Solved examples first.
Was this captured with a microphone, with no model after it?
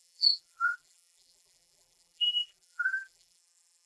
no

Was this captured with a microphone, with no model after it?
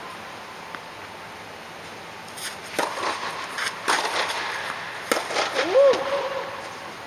yes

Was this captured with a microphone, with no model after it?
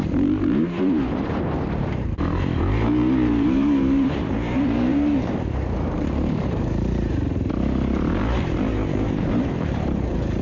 no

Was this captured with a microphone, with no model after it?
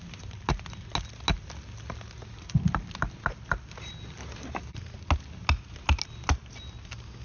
yes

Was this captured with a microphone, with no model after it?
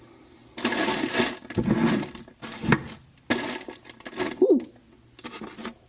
yes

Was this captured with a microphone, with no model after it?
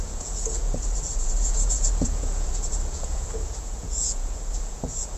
no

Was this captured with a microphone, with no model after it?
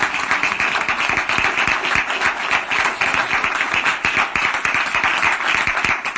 yes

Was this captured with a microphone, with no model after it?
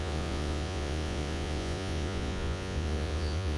no